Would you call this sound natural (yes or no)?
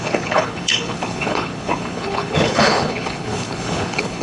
no